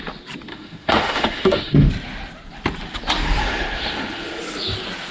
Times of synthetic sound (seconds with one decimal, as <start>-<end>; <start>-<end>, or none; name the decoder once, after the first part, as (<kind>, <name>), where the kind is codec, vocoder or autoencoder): 0.5-1.9 (autoencoder, DAC-VAE); 3.4-4.4